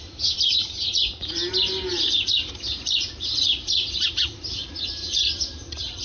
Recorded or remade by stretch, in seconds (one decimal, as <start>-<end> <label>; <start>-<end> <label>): 0.0-6.0 remade